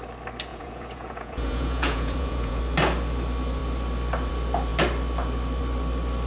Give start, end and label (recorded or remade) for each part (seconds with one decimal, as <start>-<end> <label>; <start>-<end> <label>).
0.0-0.5 recorded; 0.5-2.6 remade; 2.6-6.3 recorded